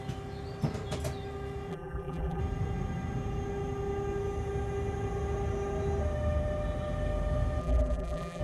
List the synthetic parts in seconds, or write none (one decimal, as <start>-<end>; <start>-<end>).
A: 1.7-2.4; 7.6-8.4